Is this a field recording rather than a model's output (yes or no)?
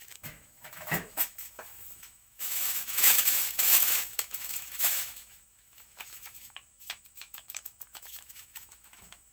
no